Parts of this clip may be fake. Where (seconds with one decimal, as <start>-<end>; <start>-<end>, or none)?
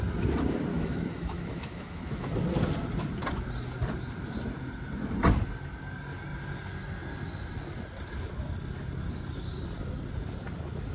0.7-2.3